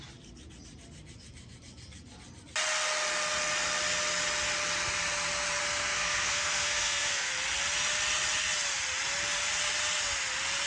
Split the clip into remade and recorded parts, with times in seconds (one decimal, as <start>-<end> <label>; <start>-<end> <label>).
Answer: 0.0-5.6 recorded; 5.6-7.3 remade; 7.3-10.7 recorded